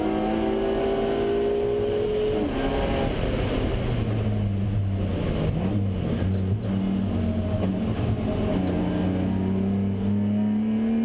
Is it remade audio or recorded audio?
recorded